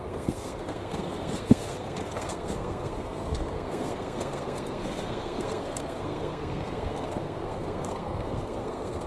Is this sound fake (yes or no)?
yes